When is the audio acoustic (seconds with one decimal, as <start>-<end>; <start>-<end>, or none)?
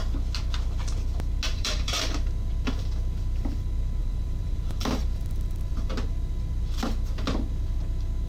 0.0-1.5; 2.3-4.0; 5.9-8.3